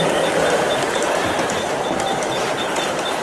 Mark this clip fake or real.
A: fake